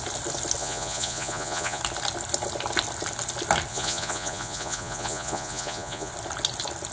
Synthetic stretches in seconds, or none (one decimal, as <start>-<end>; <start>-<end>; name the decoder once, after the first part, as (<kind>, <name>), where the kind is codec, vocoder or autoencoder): 0.6-1.8 (vocoder, Vocos); 3.7-6.1